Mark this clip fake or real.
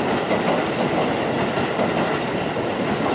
real